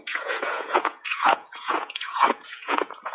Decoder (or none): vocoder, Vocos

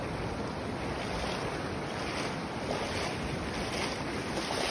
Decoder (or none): none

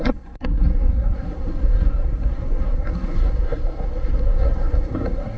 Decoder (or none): codec, SNAC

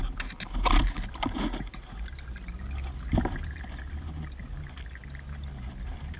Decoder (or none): none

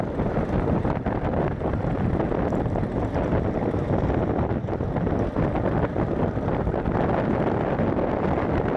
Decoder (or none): none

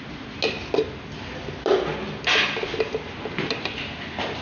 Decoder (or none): none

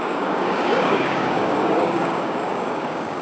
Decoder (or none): codec, DAC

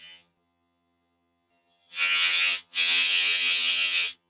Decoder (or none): vocoder, HiFi-GAN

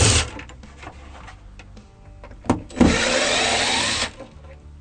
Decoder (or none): none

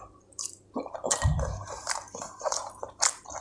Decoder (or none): vocoder, BigVGAN v2